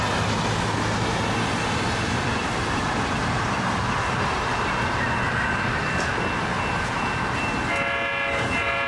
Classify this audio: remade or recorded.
recorded